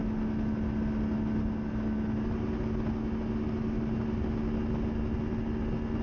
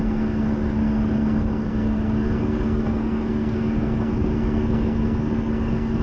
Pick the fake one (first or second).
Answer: second